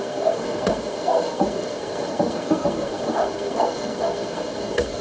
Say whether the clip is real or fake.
fake